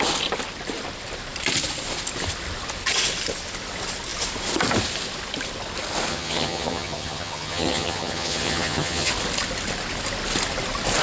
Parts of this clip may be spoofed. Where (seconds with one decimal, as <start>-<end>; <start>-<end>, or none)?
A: 6.1-9.1